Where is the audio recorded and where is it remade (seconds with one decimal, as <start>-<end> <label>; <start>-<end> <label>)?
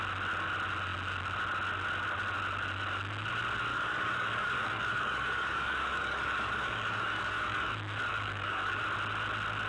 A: 0.0-3.7 recorded; 3.7-7.7 remade; 7.7-8.1 recorded; 8.1-8.8 remade; 8.8-9.7 recorded